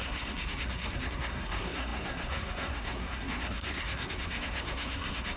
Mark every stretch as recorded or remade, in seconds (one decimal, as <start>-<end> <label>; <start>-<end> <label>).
0.0-5.4 remade